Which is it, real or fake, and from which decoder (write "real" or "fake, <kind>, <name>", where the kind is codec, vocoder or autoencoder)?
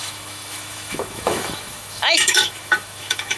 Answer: fake, autoencoder, DAC-VAE